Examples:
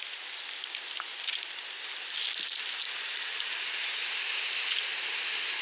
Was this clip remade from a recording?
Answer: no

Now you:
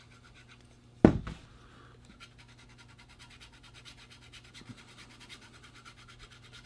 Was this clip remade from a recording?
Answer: no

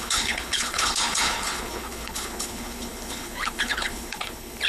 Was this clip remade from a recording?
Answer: yes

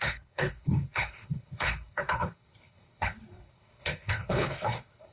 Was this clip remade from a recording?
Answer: yes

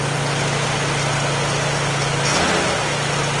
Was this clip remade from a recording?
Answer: no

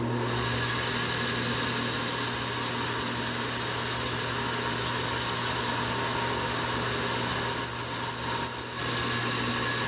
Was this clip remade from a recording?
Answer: no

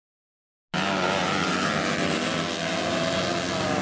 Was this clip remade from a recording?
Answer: no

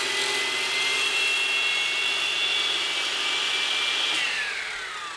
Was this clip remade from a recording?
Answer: no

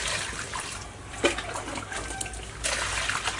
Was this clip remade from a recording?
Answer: no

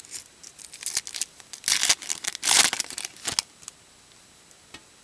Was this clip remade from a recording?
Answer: no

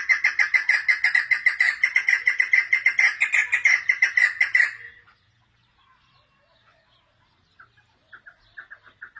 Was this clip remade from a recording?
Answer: no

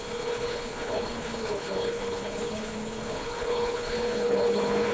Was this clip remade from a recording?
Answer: yes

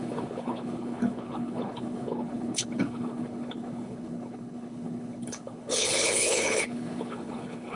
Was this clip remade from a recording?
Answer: yes